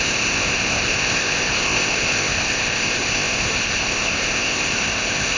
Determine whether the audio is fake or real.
fake